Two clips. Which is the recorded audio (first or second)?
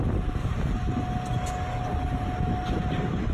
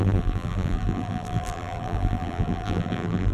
first